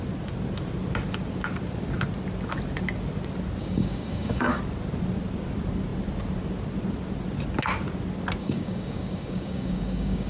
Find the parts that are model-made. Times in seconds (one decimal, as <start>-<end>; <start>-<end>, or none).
3.6-4.6; 8.4-10.3